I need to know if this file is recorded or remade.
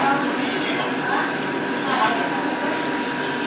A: recorded